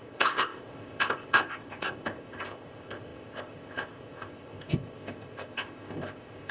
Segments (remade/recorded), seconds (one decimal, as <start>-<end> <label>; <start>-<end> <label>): 0.0-6.5 remade